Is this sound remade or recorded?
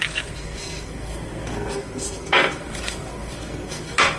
remade